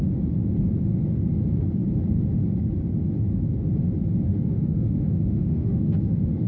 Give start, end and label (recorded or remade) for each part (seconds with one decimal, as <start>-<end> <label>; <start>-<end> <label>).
0.0-4.3 recorded; 4.3-6.5 remade